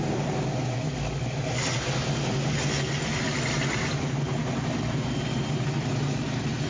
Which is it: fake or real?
real